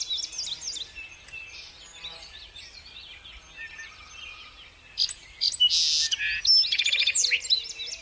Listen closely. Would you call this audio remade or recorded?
recorded